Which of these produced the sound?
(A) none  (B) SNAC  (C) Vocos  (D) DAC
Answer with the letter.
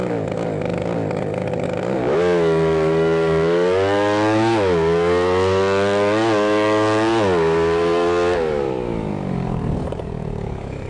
D